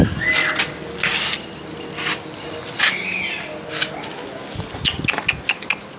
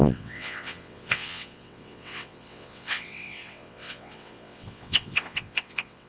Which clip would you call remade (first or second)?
second